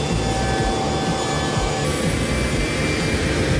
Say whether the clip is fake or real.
real